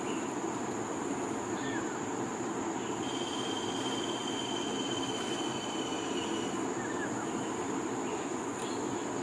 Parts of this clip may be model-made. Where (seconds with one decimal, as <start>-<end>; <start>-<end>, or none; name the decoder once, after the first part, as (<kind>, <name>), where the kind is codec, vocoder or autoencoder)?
8.1-8.6 (vocoder, Vocos)